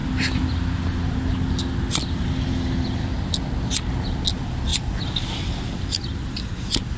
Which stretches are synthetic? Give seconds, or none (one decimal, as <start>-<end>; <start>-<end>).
none